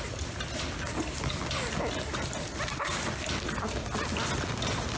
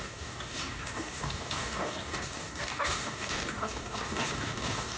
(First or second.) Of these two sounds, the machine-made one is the second